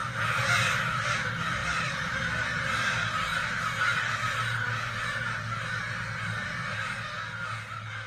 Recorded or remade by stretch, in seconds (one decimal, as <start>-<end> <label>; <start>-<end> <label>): 0.0-1.6 recorded; 1.6-2.1 remade; 2.1-8.1 recorded